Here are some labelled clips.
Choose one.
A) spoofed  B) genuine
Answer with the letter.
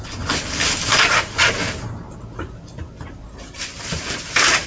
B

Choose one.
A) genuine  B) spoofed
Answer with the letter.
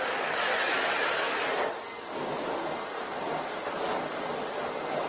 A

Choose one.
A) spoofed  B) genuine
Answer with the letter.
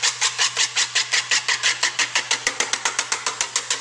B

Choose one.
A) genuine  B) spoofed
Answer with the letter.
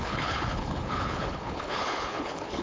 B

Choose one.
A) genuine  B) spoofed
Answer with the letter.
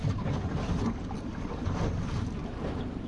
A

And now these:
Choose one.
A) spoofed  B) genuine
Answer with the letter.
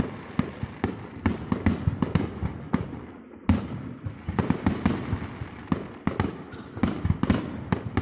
B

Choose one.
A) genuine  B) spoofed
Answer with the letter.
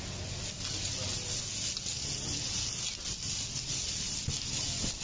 A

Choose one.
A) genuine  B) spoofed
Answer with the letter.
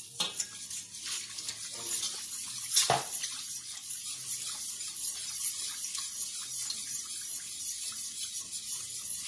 A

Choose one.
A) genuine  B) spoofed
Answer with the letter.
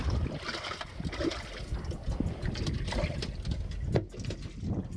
A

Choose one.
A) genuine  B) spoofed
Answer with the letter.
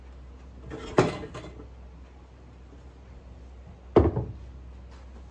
A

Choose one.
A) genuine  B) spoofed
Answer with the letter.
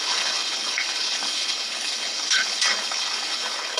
B